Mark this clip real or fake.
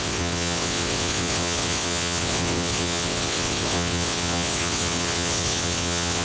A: fake